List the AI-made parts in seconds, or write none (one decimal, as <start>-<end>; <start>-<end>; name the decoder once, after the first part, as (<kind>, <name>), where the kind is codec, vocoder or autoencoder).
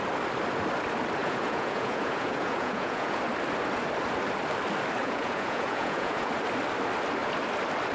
1.2-3.2 (vocoder, Vocos); 5.0-6.3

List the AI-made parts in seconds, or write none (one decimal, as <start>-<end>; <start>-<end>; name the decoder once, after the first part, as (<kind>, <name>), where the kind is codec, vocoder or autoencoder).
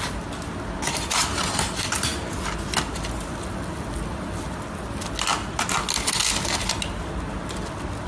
none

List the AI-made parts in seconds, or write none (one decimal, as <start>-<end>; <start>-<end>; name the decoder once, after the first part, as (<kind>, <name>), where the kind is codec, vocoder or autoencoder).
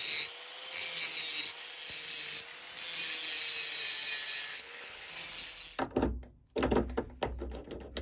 4.5-5.1 (codec, HILCodec)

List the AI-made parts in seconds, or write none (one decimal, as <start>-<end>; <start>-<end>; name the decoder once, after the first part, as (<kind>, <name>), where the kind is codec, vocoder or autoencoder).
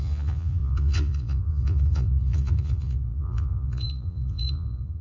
0.0-5.0 (vocoder, Vocos)